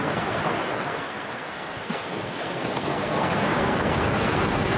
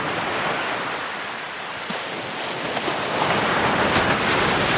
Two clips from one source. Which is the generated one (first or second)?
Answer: first